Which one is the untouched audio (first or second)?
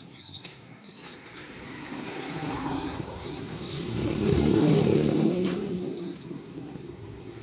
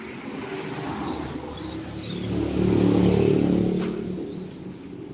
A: second